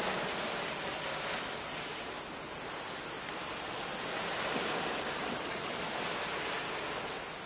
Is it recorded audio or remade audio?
recorded